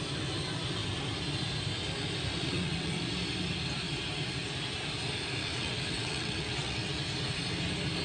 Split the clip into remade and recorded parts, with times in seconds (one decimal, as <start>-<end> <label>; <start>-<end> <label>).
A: 0.0-2.4 recorded; 2.4-3.0 remade; 3.0-5.4 recorded; 5.4-7.0 remade; 7.0-8.0 recorded